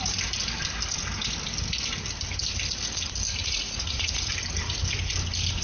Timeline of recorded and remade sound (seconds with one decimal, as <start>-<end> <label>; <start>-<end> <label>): 0.0-3.4 recorded; 3.4-4.3 remade; 4.3-5.6 recorded